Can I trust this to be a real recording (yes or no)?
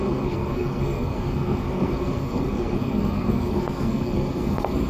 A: no